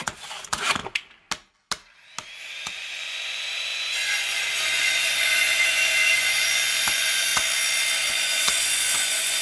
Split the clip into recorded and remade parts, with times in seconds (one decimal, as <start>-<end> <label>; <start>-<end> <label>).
0.0-0.8 remade; 0.8-2.4 recorded; 2.4-7.3 remade; 7.3-8.1 recorded; 8.1-9.4 remade